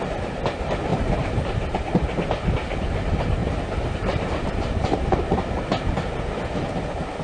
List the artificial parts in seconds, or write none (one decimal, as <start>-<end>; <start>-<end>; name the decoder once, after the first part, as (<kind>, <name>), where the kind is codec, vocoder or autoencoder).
0.9-2.0 (vocoder, BigVGAN v2); 3.4-4.7